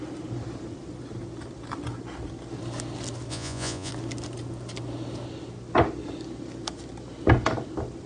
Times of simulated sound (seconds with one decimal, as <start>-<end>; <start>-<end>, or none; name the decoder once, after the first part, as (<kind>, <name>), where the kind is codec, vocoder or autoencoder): 3.3-3.9 (vocoder, Vocos)